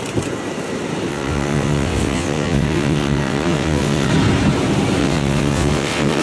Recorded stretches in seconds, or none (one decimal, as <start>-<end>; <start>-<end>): 0.0-1.1; 4.1-5.0